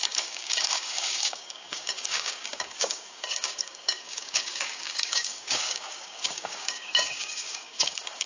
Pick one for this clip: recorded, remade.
remade